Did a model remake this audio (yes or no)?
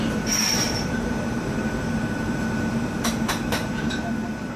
yes